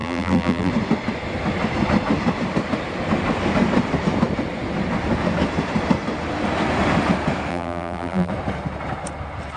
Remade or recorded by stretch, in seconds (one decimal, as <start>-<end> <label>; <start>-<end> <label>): 0.0-0.7 remade; 0.7-7.5 recorded; 7.5-8.3 remade; 8.3-9.6 recorded